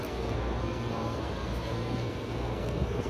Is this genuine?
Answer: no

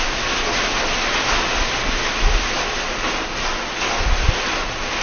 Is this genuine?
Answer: yes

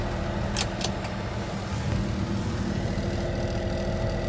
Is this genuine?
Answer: yes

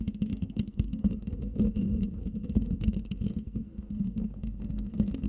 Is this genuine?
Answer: no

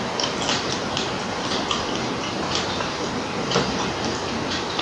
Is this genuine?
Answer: yes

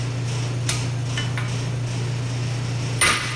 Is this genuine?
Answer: yes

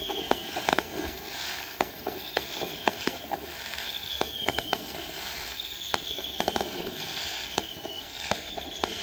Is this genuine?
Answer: no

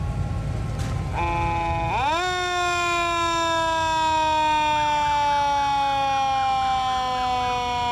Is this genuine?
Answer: yes